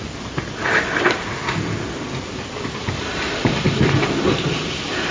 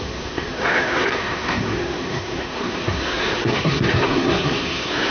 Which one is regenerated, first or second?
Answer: second